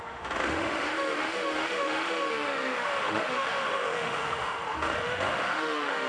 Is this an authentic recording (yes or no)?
no